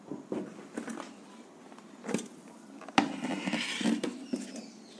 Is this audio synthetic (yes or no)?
no